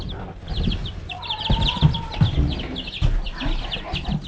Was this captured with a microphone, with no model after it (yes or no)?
yes